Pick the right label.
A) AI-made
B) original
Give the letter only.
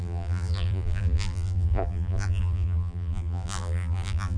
A